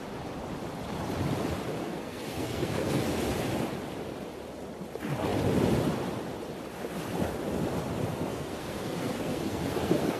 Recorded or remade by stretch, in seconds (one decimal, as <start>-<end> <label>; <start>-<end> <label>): 0.0-1.8 recorded; 1.8-3.2 remade; 3.2-8.1 recorded; 8.1-10.2 remade